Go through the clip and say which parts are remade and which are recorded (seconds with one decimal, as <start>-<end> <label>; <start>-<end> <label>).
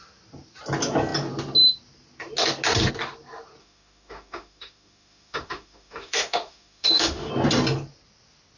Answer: 0.0-3.6 recorded; 3.6-7.3 remade; 7.3-8.6 recorded